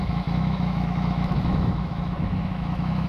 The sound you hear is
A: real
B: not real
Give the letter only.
B